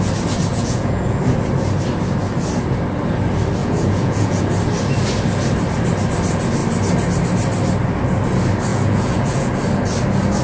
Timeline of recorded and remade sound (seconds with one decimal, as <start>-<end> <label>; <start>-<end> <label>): 0.0-0.5 recorded; 0.5-1.2 remade; 1.2-3.6 recorded; 3.6-4.4 remade; 4.4-8.7 recorded; 8.7-9.5 remade; 9.5-10.4 recorded